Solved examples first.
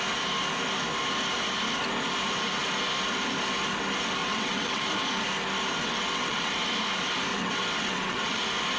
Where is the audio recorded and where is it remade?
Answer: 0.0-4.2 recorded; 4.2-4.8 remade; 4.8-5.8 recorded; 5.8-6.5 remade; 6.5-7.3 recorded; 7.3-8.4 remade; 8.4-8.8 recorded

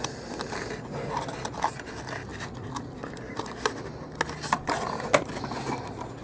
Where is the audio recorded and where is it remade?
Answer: 0.0-6.2 recorded

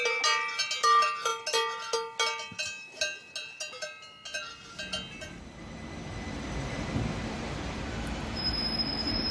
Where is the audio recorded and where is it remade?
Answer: 0.0-9.3 recorded

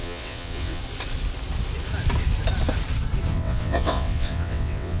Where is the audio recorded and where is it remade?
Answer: 0.0-0.8 remade; 0.8-3.3 recorded; 3.3-5.0 remade

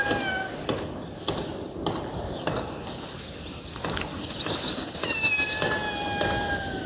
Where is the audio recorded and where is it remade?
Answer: 0.0-6.9 recorded

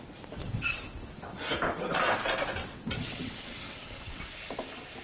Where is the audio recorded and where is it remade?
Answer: 0.0-0.4 recorded; 0.4-0.9 remade; 0.9-2.6 recorded; 2.6-4.2 remade; 4.2-5.0 recorded